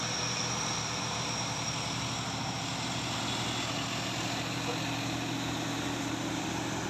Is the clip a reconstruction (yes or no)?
no